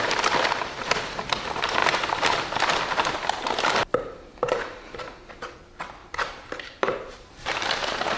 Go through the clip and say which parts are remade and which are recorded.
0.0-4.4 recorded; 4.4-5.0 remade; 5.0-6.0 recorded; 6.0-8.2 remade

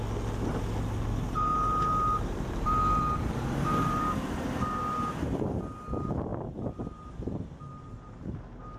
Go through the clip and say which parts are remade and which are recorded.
0.0-1.5 recorded; 1.5-4.0 remade; 4.0-8.8 recorded

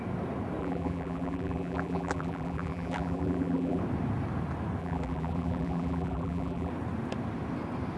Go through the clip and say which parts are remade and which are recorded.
0.0-0.6 recorded; 0.6-3.8 remade; 3.8-4.8 recorded; 4.8-6.7 remade; 6.7-8.0 recorded

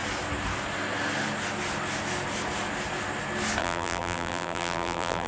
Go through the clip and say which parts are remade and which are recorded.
0.0-3.6 recorded; 3.6-5.3 remade

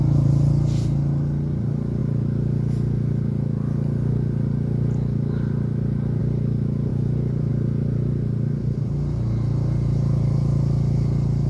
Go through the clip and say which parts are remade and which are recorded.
0.0-6.9 recorded; 6.9-7.5 remade; 7.5-11.5 recorded

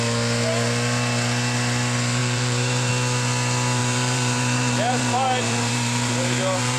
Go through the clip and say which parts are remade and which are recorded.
0.0-2.2 recorded; 2.2-2.9 remade; 2.9-3.8 recorded; 3.8-6.8 remade

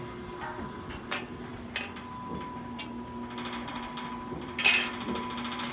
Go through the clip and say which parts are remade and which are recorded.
0.0-5.7 recorded